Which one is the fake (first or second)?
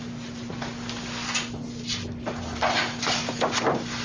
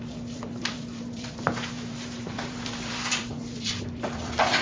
second